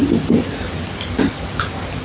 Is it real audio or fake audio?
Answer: real